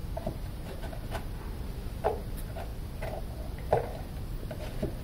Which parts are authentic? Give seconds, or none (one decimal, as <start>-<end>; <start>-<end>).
0.8-5.0

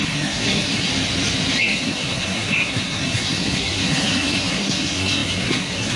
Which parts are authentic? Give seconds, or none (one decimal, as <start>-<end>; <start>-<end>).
0.9-1.6

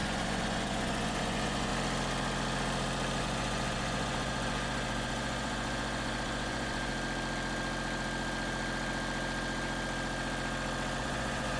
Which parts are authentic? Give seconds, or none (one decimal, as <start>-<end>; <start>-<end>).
1.7-3.2; 6.9-11.0

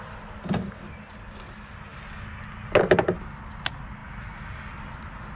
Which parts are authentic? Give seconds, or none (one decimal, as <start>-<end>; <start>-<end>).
0.0-5.4

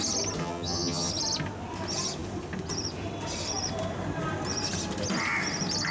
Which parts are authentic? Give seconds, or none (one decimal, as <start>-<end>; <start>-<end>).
0.0-0.4; 1.1-5.9

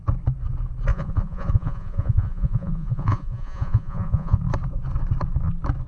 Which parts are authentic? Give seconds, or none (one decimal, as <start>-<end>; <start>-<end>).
0.0-0.9; 4.4-5.9

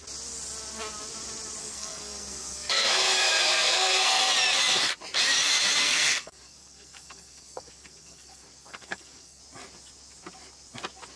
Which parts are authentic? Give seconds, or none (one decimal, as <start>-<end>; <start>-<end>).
0.0-1.6; 4.2-5.8; 9.4-11.2